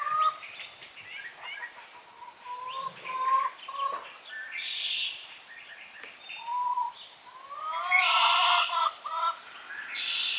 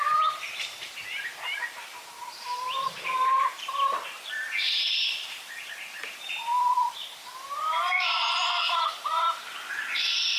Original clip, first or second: first